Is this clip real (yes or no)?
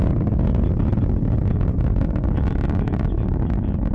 yes